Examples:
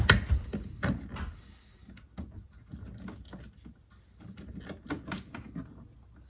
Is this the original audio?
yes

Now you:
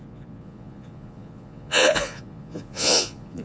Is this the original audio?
no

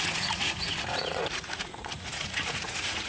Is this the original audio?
no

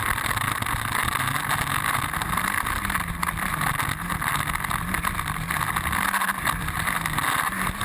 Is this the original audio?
yes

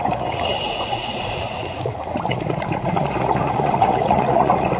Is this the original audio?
no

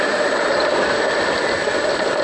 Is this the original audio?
yes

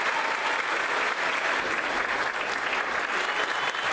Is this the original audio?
yes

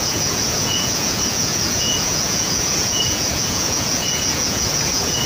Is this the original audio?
no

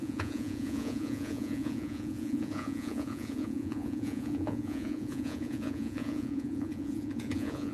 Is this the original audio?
no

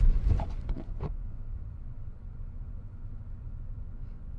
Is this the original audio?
no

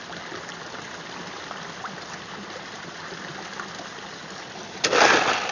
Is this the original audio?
yes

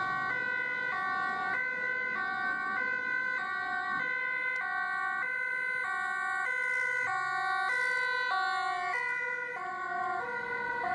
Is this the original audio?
yes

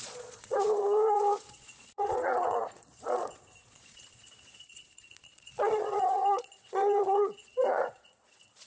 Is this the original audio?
no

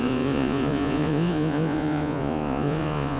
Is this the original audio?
no